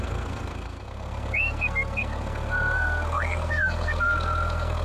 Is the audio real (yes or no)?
no